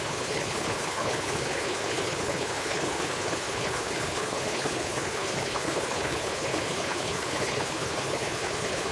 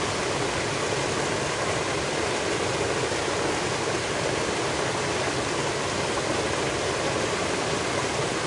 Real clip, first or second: second